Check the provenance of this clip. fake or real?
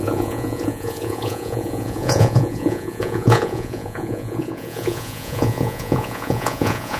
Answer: fake